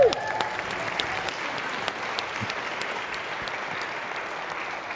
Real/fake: real